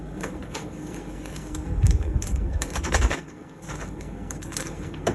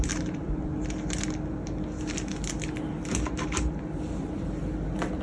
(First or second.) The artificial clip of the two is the first